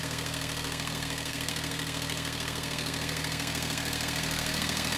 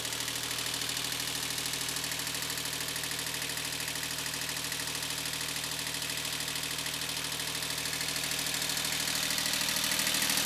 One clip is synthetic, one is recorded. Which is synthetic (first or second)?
first